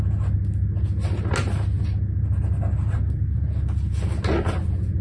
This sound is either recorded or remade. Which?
recorded